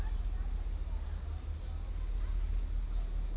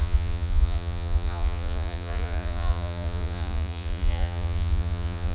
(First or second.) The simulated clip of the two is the second